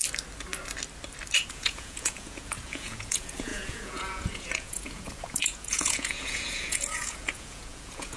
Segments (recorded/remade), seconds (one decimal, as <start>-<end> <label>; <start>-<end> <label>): 0.0-1.5 recorded; 1.5-8.2 remade